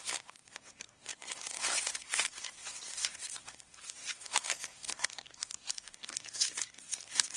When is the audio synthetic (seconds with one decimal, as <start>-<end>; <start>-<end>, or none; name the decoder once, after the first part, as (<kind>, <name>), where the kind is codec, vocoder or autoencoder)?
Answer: 0.0-7.4 (codec, SNAC)